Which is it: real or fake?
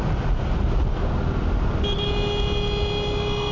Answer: real